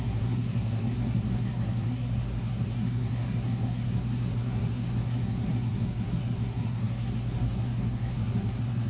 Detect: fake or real fake